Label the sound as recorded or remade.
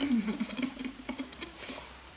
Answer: remade